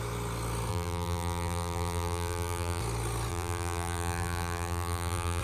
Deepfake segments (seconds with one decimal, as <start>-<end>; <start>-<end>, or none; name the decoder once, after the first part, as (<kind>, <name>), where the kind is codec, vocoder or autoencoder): 0.7-2.8 (vocoder, BigVGAN v2); 3.3-5.4